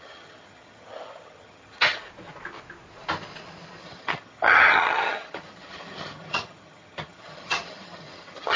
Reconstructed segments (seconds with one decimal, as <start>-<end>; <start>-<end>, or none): 0.0-2.0; 3.8-8.6